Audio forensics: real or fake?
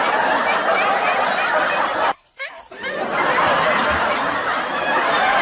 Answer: real